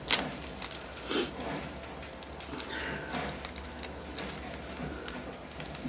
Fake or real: real